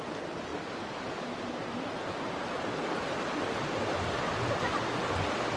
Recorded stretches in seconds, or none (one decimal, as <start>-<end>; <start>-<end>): 0.0-5.6